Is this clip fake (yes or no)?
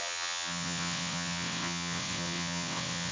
yes